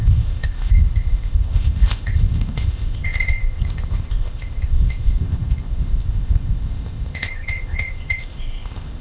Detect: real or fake fake